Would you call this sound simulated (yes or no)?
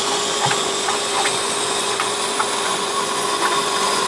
yes